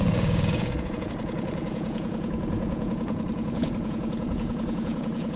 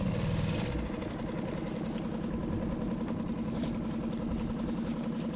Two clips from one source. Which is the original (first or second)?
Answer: second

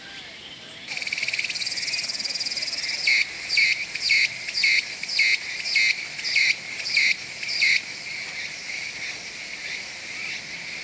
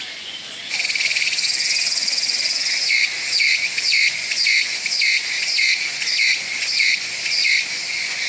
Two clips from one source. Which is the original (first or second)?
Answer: first